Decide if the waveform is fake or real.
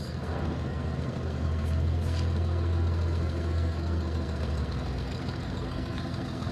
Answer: fake